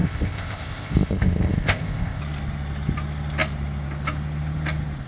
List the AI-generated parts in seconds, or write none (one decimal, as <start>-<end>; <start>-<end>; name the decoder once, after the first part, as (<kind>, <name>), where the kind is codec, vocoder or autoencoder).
0.0-2.2 (codec, ZipCodec)